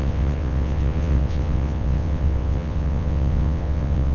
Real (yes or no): no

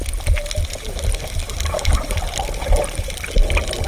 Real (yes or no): yes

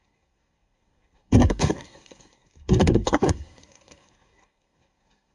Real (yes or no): no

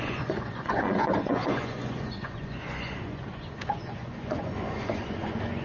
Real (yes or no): no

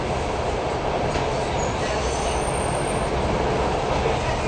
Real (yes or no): yes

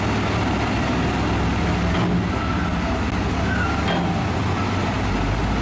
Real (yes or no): yes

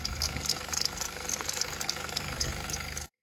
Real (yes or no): no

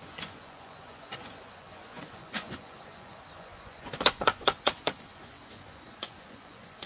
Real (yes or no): no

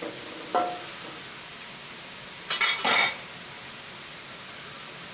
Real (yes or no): yes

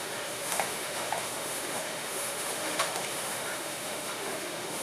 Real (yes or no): no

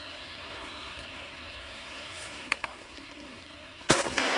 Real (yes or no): no